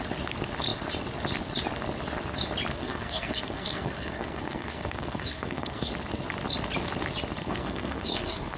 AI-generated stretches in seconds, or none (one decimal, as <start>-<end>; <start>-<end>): 2.8-5.9; 7.4-8.6